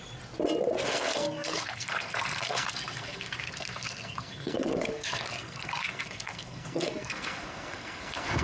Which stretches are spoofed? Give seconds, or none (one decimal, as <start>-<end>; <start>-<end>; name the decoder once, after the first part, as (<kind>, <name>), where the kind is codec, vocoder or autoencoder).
0.9-8.4 (codec, SNAC)